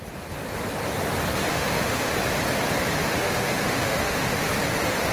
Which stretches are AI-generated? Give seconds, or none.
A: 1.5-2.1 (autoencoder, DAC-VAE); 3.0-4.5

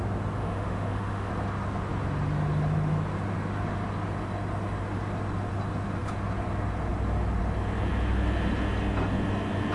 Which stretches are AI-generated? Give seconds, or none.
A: 0.4-1.3 (autoencoder, DAC-VAE)